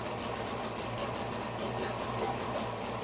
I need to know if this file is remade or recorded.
recorded